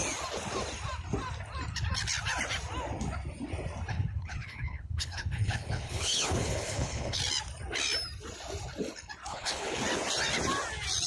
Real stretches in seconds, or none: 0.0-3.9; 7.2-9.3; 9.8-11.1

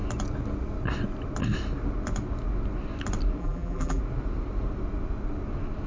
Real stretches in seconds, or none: 0.0-3.4; 4.0-5.9

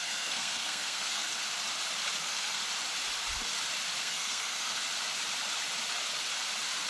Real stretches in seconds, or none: 1.3-2.2; 2.6-4.0; 4.7-6.9

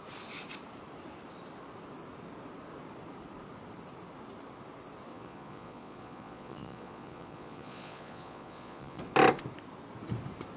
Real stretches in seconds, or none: 0.0-5.1; 9.0-10.6

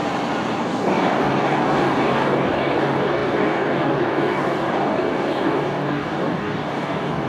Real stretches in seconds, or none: 0.0-0.6

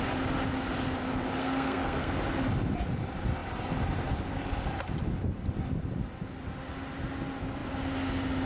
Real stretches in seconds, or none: 0.0-1.4; 2.1-8.5

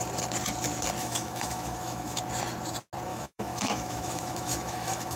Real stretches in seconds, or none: 0.0-1.0; 2.2-3.1